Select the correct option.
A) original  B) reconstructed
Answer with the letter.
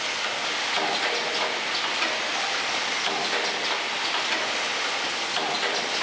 A